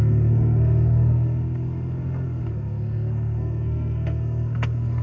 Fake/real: fake